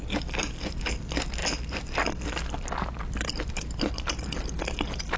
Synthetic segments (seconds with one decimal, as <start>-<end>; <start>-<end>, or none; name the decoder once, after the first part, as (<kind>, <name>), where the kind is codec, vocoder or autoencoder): none